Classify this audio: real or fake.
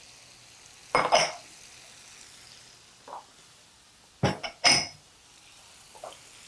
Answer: real